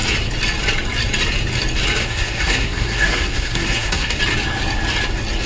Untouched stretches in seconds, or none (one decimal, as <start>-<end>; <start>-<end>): 0.0-2.0; 4.2-5.5